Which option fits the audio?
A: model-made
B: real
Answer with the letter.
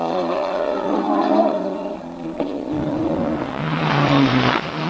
A